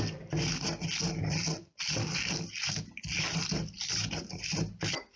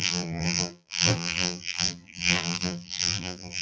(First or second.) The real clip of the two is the first